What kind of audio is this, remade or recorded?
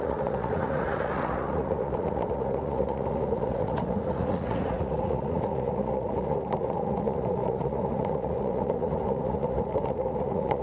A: remade